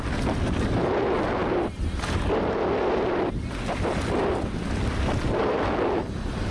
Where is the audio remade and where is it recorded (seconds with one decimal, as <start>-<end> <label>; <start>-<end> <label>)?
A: 0.0-6.5 recorded